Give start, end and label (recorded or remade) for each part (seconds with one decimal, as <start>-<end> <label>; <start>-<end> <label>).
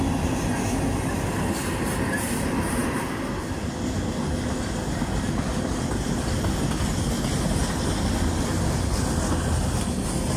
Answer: 0.0-10.4 recorded